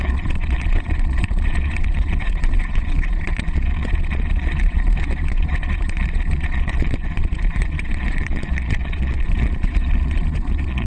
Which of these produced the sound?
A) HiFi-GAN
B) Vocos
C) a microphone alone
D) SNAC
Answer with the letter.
B